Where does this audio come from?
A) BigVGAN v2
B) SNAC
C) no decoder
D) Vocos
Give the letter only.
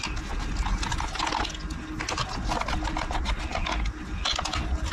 C